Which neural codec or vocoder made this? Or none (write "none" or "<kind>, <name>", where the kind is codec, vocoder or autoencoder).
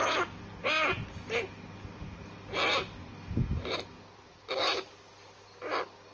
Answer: none